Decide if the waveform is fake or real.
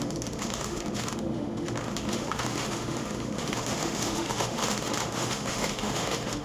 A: fake